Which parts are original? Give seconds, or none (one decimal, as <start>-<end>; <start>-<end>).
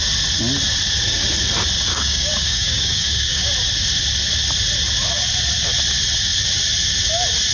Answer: 0.0-1.9; 3.5-7.5